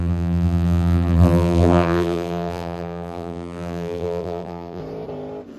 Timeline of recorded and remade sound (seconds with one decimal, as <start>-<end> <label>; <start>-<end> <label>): 0.0-4.8 remade; 4.8-5.6 recorded